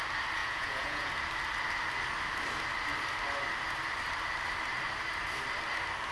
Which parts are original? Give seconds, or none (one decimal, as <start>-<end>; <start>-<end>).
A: 0.0-0.4; 1.1-6.1